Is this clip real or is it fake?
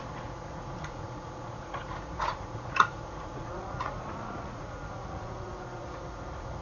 fake